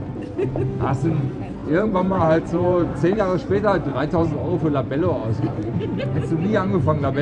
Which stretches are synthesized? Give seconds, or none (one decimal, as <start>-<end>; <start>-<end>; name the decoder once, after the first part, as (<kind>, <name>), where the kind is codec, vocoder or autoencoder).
1.6-3.2 (vocoder, BigVGAN v2); 3.9-4.6; 5.2-6.0